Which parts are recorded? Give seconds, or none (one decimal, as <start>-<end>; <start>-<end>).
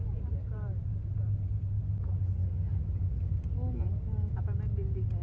1.8-5.2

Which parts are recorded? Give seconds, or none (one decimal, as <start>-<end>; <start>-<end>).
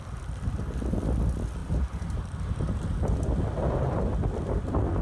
0.0-5.0